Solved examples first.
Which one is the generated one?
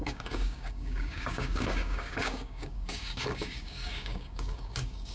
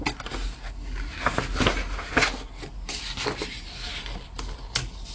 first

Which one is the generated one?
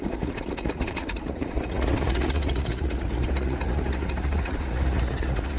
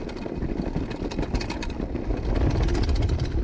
first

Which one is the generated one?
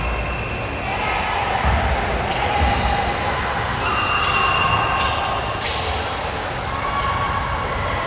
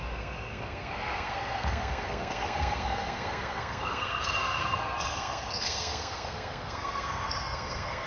second